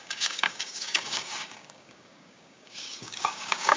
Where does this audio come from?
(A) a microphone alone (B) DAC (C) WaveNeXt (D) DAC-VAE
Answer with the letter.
B